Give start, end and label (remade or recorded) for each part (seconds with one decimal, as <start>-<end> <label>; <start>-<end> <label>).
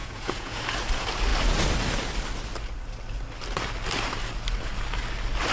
0.0-0.6 remade; 0.6-5.5 recorded